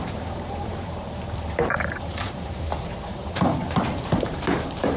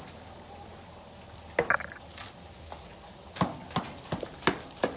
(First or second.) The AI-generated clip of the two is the first